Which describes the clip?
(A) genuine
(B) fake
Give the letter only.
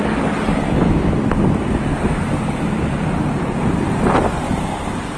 A